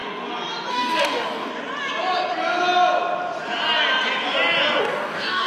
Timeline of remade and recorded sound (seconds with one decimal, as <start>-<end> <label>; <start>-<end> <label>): 0.0-0.7 recorded; 0.7-1.5 remade; 1.5-4.8 recorded; 4.8-5.5 remade